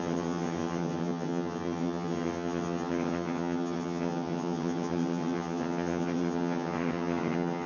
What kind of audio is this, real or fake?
fake